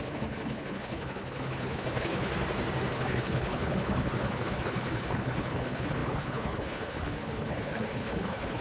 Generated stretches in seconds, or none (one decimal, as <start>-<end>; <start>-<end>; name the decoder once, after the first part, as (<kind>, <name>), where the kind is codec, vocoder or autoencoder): 0.0-2.3 (codec, HILCodec); 2.9-8.6